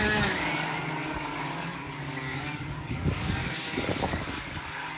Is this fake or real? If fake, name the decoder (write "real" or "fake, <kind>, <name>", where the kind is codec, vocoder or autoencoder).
fake, codec, DAC